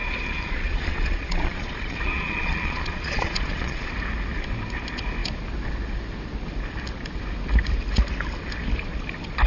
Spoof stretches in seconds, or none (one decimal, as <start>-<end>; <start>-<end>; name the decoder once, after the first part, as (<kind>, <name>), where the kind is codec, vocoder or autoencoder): 0.0-3.9 (vocoder, Vocos)